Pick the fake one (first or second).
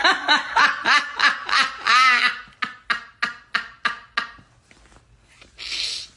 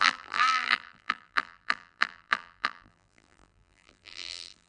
second